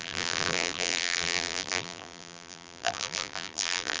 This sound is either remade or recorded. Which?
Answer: remade